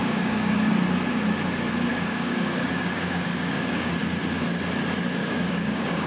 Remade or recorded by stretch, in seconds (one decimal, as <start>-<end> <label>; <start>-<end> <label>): 0.0-0.7 remade; 0.7-1.9 recorded; 1.9-3.9 remade; 3.9-5.2 recorded; 5.2-6.1 remade

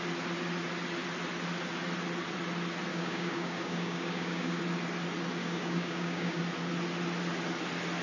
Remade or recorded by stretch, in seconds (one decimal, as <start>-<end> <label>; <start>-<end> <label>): 0.0-2.9 recorded; 2.9-4.6 remade; 4.6-5.4 recorded; 5.4-6.4 remade; 6.4-8.0 recorded

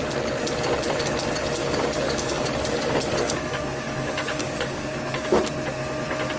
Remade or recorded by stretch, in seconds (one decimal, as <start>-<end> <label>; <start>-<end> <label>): 0.0-1.6 recorded; 1.6-5.4 remade; 5.4-6.4 recorded

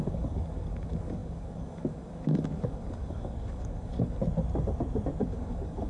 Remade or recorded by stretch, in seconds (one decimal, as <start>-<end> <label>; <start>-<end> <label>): 0.0-4.2 remade; 4.2-5.2 recorded; 5.2-5.9 remade